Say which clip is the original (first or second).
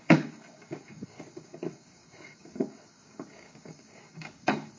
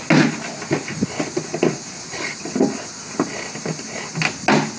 second